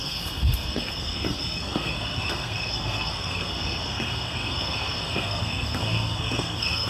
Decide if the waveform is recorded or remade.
remade